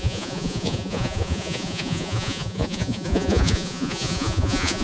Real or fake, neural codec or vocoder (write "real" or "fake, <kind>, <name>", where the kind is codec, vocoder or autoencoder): fake, vocoder, Vocos